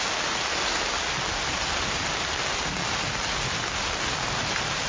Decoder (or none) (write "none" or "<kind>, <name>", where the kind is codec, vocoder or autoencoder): none